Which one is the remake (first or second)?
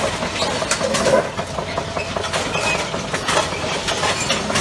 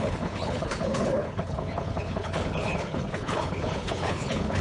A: second